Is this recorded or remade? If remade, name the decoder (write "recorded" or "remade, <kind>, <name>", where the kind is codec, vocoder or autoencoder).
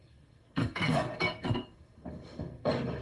remade, codec, SNAC